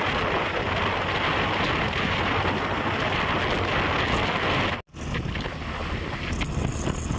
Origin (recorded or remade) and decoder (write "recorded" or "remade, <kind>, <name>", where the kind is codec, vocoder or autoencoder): recorded